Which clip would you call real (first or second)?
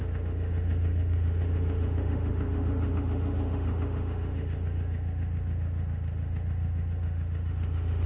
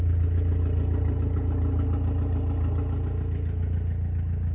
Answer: second